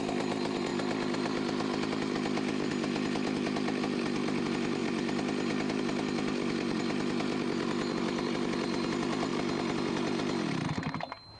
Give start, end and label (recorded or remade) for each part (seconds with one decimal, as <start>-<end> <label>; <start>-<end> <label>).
0.0-11.4 recorded